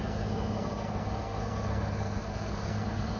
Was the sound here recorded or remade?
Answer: remade